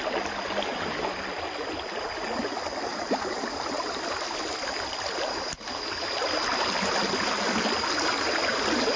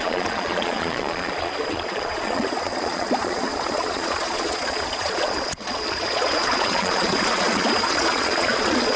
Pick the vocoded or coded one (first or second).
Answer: second